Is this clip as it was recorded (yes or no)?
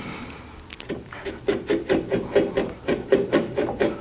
no